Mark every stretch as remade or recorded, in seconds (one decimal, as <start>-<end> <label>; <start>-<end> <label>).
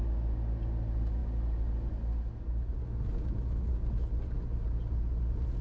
0.0-5.6 recorded